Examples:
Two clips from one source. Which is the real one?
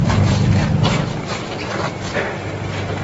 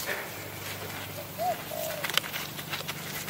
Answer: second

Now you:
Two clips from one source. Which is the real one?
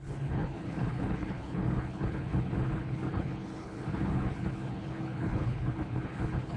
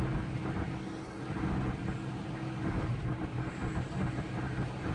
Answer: second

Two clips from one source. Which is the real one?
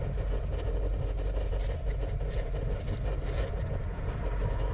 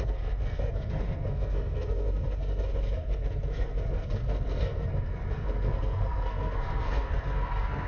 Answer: first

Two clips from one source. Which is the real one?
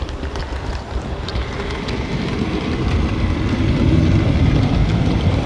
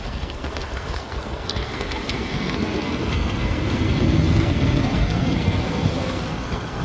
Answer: first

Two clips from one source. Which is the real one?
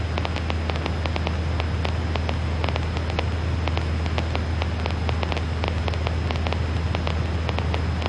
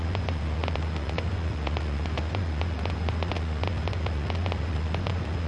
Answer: first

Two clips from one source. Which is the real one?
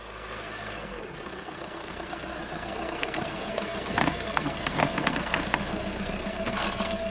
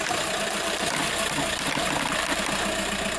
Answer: second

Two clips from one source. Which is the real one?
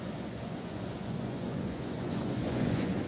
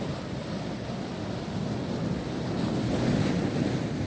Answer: second